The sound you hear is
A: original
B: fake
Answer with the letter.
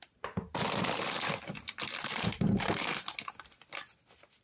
A